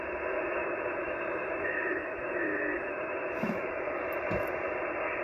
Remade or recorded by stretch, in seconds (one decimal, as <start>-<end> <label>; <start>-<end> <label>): 0.0-0.6 recorded; 0.6-3.7 remade; 3.7-5.2 recorded